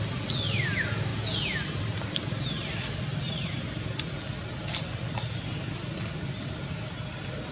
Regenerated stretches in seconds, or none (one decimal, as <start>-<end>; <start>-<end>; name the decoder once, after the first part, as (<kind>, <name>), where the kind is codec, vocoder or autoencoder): none